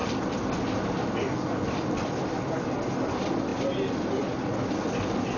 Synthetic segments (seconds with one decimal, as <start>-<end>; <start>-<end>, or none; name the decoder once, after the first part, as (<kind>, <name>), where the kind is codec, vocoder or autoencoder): none